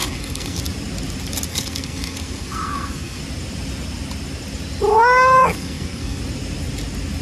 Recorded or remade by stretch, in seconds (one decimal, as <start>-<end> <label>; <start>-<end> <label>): 0.0-0.6 remade; 0.6-1.5 recorded; 1.5-3.2 remade; 3.2-4.9 recorded; 4.9-6.2 remade; 6.2-7.2 recorded